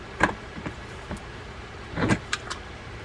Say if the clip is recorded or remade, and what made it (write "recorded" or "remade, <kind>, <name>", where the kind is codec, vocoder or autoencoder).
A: remade, vocoder, BigVGAN v2